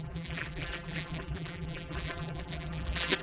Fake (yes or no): yes